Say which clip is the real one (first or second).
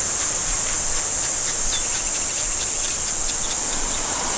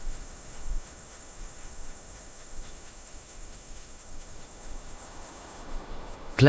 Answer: first